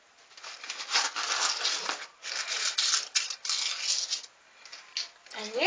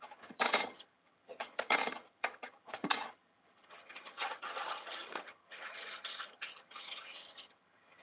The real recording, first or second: first